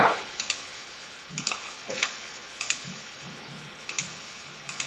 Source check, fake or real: fake